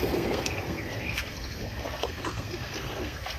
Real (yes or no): no